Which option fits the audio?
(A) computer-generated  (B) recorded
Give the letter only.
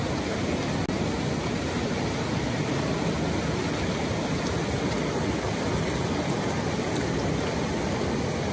B